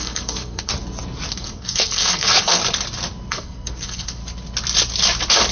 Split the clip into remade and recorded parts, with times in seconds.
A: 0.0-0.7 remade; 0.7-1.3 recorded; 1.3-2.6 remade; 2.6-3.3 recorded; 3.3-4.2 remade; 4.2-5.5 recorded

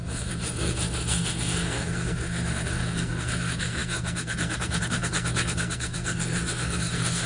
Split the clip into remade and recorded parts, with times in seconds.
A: 0.0-7.3 remade